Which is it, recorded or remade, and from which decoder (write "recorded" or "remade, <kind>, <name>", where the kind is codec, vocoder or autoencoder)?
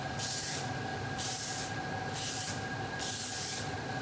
recorded